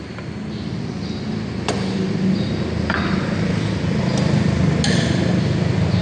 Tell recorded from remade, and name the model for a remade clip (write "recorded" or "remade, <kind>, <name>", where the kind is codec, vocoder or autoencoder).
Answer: recorded